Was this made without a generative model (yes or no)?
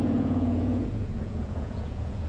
no